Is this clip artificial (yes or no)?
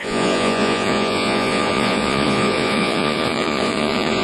yes